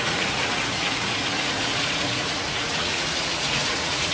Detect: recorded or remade remade